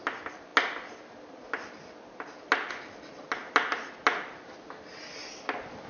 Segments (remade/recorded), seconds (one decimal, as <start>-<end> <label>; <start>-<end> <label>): 0.0-5.9 recorded